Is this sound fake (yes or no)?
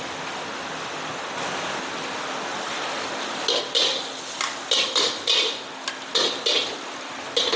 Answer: no